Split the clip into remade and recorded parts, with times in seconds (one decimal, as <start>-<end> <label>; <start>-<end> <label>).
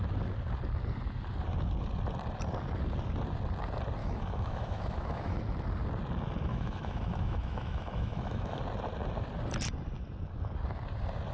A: 0.0-4.0 recorded; 4.0-5.4 remade; 5.4-6.5 recorded; 6.5-8.6 remade; 8.6-11.3 recorded